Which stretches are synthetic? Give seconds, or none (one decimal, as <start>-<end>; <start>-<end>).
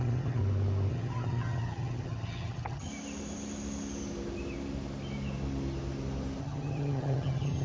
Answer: 0.0-0.4; 0.9-2.9; 6.4-7.6